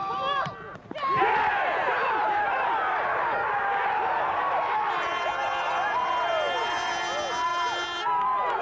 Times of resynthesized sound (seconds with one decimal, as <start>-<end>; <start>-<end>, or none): none